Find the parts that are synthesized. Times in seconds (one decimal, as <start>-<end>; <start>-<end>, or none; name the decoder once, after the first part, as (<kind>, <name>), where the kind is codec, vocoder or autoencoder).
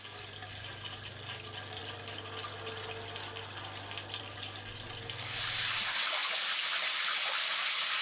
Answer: 6.2-6.9 (vocoder, BigVGAN v2)